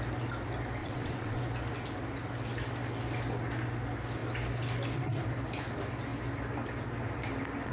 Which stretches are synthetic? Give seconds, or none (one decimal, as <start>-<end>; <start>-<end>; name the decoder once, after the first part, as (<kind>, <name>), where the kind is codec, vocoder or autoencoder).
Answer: 0.8-1.4 (vocoder, WaveNeXt)